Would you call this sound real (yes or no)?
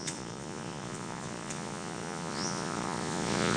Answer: no